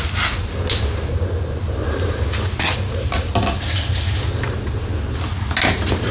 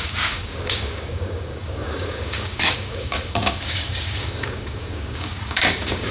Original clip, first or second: first